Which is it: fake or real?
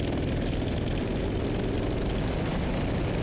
real